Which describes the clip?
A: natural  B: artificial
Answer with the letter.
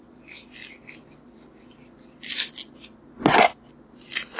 A